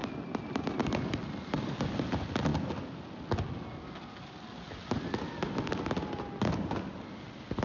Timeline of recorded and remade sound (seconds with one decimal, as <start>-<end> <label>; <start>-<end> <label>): 0.0-7.6 recorded